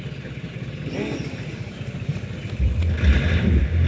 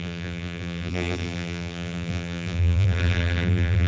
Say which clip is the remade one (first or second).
second